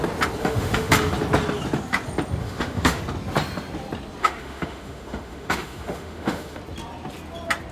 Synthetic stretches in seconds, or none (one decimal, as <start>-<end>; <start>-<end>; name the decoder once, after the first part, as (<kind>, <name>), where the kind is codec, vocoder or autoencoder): 0.4-0.9 (autoencoder, DAC-VAE); 2.4-3.0; 4.2-6.6

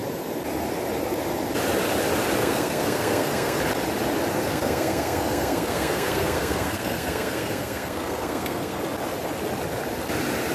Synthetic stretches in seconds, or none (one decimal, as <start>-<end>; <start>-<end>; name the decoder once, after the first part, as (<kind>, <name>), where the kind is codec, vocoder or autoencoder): 2.4-3.6 (codec, SNAC); 4.3-8.8

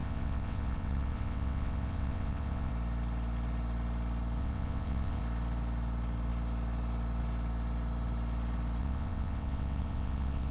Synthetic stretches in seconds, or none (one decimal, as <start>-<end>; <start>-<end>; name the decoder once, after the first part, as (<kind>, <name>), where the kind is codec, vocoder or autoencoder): 0.0-2.7 (vocoder, WaveNeXt); 4.4-5.2; 8.8-10.5

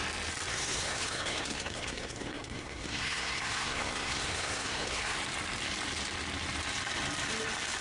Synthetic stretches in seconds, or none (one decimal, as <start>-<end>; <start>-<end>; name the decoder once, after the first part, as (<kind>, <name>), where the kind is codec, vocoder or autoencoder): 0.5-5.2 (codec, SNAC)

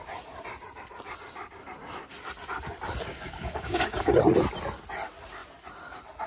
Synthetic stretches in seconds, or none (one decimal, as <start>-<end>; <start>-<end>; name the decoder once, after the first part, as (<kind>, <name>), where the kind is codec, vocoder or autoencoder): 3.1-4.1 (codec, DAC)

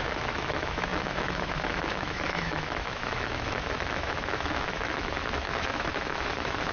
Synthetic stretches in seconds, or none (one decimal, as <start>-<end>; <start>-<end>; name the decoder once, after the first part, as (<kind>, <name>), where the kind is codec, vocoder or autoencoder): 0.0-6.7 (autoencoder, DAC-VAE)